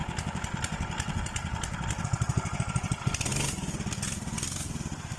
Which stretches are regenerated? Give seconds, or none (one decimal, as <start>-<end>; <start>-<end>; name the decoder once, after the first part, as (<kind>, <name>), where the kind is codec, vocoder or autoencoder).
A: 0.0-2.6 (vocoder, BigVGAN v2); 3.3-4.8